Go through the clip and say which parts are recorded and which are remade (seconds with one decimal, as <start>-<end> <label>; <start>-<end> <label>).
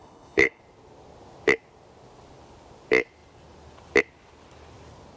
0.0-0.6 remade; 0.6-5.2 recorded